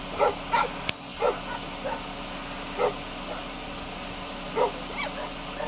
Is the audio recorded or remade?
recorded